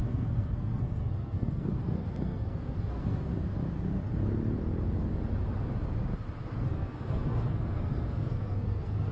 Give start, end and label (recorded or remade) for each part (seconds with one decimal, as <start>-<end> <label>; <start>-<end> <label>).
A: 0.0-3.3 remade; 3.3-6.4 recorded; 6.4-9.1 remade